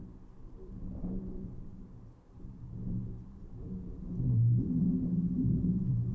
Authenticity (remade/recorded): remade